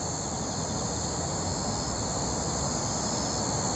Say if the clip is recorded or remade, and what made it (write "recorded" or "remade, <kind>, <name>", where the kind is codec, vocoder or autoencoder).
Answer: recorded